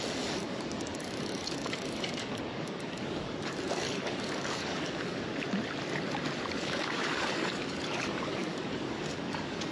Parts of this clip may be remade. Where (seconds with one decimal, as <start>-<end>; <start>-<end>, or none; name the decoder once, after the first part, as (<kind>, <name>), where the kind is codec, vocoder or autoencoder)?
0.0-5.3 (codec, DAC); 6.5-9.7